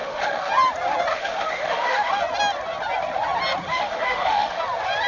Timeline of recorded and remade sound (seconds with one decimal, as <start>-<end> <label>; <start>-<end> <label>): 0.0-0.5 remade; 0.5-1.1 recorded; 1.1-2.2 remade; 2.2-3.7 recorded; 3.7-4.6 remade; 4.6-5.1 recorded